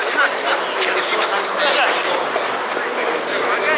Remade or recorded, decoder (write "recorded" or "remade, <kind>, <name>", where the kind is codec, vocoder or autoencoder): recorded